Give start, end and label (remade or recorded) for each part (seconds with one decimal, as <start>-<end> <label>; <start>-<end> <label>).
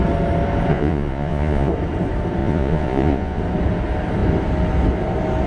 0.0-0.7 recorded; 0.7-1.7 remade; 1.7-2.4 recorded; 2.4-3.4 remade; 3.4-5.5 recorded